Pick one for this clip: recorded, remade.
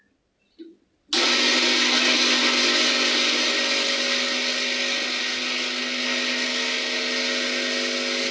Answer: recorded